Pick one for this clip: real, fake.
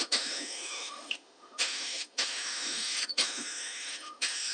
fake